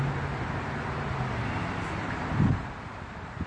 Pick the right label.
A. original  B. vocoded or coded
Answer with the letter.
A